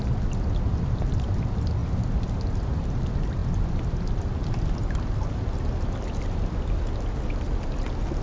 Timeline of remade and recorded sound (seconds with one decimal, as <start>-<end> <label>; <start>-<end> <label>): 0.0-8.2 recorded